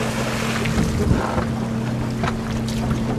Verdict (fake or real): real